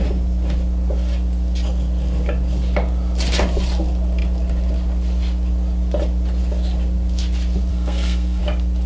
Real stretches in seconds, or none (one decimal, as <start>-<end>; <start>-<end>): 0.0-7.7; 8.4-8.9